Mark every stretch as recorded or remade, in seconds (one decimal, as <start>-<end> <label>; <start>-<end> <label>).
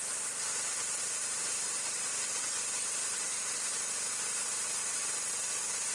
0.0-5.9 recorded